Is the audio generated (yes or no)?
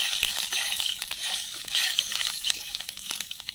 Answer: yes